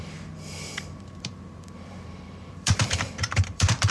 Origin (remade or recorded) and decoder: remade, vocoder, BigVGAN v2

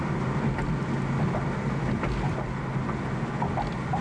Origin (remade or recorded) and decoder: recorded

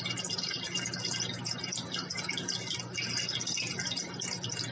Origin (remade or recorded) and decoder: recorded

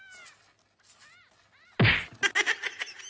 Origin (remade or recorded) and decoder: recorded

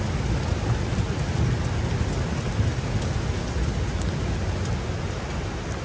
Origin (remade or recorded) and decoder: recorded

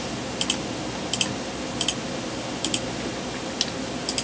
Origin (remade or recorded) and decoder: recorded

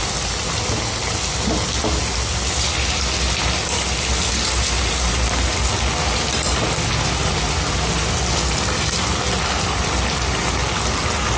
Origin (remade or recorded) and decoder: recorded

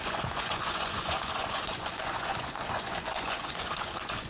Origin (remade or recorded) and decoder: remade, vocoder, Vocos